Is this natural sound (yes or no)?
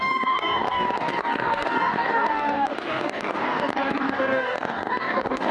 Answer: no